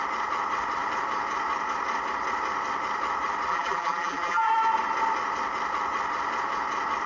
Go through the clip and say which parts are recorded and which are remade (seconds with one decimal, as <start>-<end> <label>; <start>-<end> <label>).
0.0-3.5 recorded; 3.5-4.5 remade; 4.5-7.1 recorded